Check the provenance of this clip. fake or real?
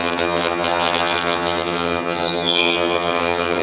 fake